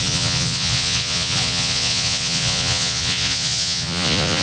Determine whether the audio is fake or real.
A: fake